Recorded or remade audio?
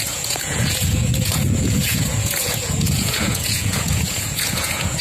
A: remade